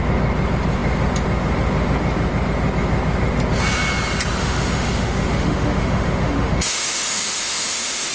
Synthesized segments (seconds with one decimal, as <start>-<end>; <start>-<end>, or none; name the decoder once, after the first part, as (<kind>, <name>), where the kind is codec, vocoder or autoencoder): 4.4-8.1 (autoencoder, DAC-VAE)